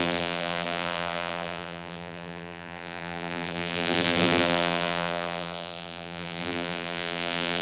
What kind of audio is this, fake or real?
fake